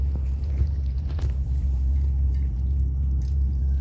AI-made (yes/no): yes